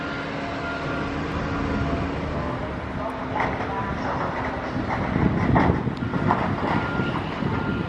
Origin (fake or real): real